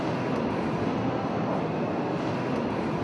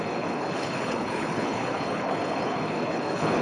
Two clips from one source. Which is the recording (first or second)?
first